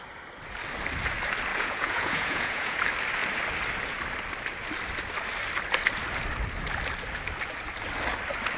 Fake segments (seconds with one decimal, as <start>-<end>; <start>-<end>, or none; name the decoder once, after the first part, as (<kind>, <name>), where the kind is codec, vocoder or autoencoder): 1.5-2.8 (vocoder, Vocos)